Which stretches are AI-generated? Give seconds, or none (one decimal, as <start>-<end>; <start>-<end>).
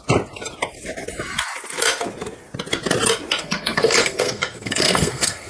3.4-5.5